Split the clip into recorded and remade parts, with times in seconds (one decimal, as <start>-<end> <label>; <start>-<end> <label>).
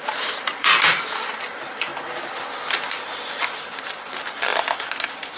0.0-1.9 remade; 1.9-4.0 recorded; 4.0-4.5 remade; 4.5-5.4 recorded